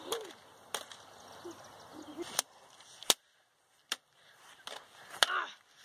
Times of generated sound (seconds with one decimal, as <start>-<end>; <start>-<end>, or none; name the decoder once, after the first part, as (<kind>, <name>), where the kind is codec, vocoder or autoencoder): none